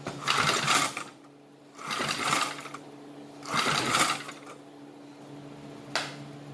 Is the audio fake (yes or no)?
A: no